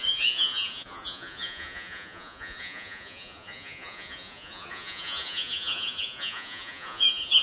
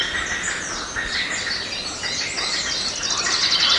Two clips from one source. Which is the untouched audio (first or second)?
second